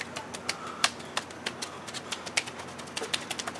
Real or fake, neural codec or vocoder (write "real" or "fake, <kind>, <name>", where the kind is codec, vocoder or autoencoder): real